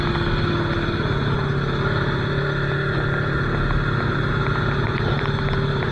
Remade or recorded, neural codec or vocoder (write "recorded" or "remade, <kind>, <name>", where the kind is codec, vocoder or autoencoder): recorded